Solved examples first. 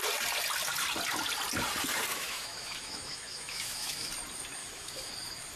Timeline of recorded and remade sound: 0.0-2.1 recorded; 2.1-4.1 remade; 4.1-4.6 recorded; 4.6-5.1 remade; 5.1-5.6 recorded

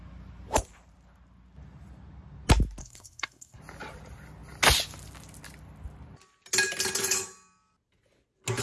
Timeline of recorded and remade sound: 0.0-2.8 recorded; 2.8-3.6 remade; 3.6-8.6 recorded

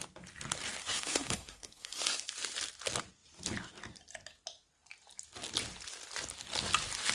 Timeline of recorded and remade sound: 0.0-0.8 recorded; 0.8-2.3 remade; 2.3-7.1 recorded

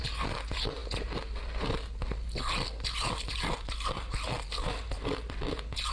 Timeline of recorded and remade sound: 0.0-5.9 recorded

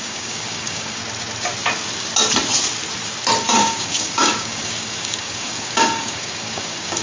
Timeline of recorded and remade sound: 0.0-1.0 remade; 1.0-3.4 recorded; 3.4-7.0 remade

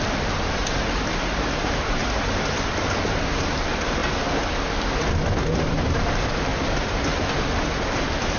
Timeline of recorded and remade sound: 0.0-2.0 remade; 2.0-2.7 recorded; 2.7-4.0 remade; 4.0-5.1 recorded; 5.1-6.5 remade; 6.5-8.0 recorded; 8.0-8.4 remade

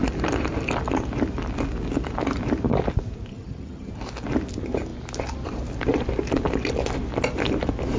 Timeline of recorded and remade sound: 0.0-3.3 recorded; 3.3-3.9 remade; 3.9-8.0 recorded

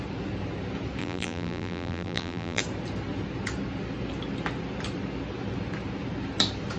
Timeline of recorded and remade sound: 0.0-1.0 recorded; 1.0-2.6 remade; 2.6-6.8 recorded